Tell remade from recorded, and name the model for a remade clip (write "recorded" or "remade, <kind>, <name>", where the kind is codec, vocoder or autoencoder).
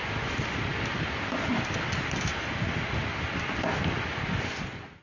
recorded